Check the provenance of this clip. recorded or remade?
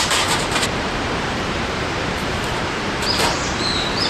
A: remade